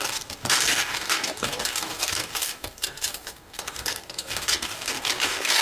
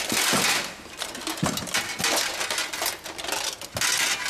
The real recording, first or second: second